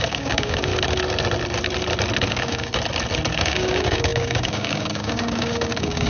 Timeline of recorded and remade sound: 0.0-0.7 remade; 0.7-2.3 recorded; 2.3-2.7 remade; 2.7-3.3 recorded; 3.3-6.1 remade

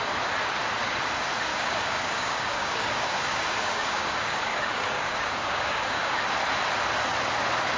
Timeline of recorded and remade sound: 0.0-1.5 recorded; 1.5-6.2 remade; 6.2-7.8 recorded

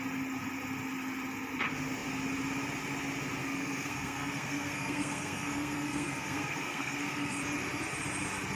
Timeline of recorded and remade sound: 0.0-3.4 recorded; 3.4-7.4 remade; 7.4-8.6 recorded

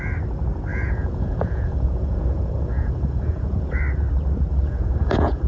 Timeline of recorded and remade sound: 0.0-0.7 recorded; 0.7-3.8 remade; 3.8-4.5 recorded; 4.5-5.5 remade

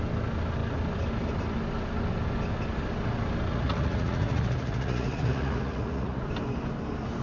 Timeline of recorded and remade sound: 0.0-3.5 recorded; 3.5-6.2 remade; 6.2-7.2 recorded

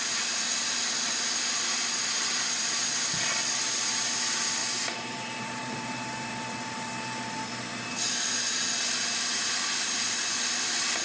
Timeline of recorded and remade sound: 0.0-4.6 recorded; 4.6-6.3 remade; 6.3-11.0 recorded

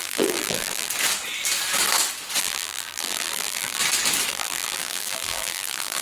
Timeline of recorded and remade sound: 0.0-0.9 remade; 0.9-2.4 recorded; 2.4-3.8 remade; 3.8-4.3 recorded; 4.3-6.0 remade